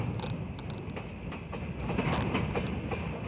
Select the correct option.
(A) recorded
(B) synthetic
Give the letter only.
A